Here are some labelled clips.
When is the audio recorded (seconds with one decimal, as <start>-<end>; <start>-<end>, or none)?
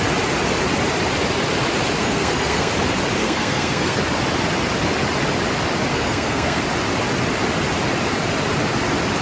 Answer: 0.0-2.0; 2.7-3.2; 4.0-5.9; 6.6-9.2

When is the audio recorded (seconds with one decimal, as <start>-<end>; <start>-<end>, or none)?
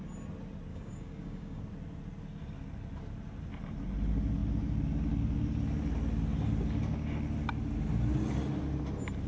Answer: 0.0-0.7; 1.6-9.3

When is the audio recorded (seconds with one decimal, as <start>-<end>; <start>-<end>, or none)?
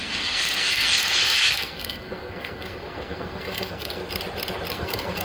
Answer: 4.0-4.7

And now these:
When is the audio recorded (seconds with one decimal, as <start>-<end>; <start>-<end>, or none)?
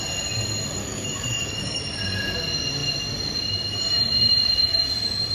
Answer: 0.0-0.8; 1.8-5.3